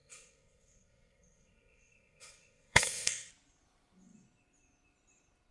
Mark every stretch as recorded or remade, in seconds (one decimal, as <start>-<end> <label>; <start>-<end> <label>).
0.0-3.3 remade; 3.3-5.5 recorded